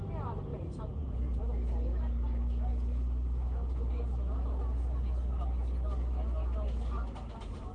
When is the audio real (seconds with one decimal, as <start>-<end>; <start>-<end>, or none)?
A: 0.0-0.5; 1.4-7.7

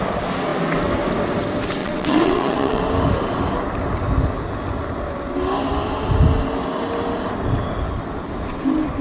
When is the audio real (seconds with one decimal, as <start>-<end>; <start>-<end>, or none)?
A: 0.0-1.8; 2.8-9.0

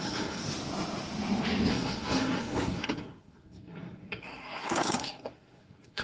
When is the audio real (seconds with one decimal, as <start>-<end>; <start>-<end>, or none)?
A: 0.4-1.7

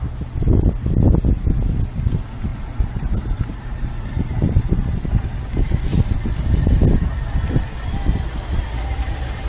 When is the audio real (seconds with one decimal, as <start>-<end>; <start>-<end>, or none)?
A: 0.0-2.5; 5.4-9.5